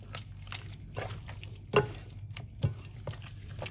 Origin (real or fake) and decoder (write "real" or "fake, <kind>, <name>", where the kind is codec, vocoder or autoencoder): real